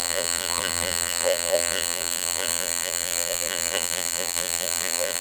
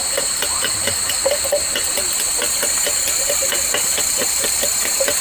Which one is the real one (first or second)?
second